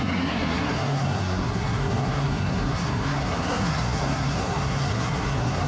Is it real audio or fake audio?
fake